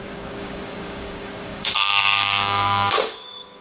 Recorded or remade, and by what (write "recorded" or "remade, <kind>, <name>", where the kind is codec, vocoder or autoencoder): remade, codec, DAC